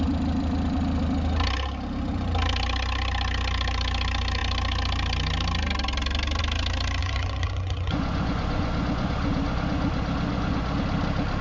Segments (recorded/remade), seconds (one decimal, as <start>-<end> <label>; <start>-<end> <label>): 0.0-7.0 recorded; 7.0-10.8 remade; 10.8-11.4 recorded

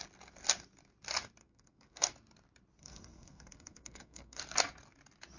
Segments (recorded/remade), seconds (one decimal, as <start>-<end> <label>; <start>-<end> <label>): 0.0-1.4 recorded; 1.4-2.1 remade; 2.1-2.8 recorded; 2.8-4.4 remade; 4.4-5.4 recorded